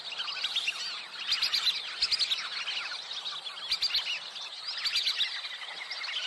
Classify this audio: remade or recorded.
recorded